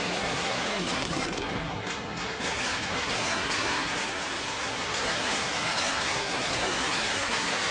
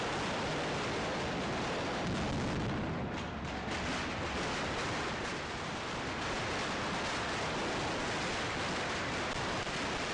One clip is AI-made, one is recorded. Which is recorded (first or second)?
second